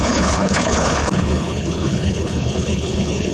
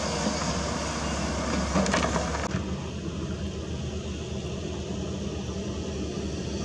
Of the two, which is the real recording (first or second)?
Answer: second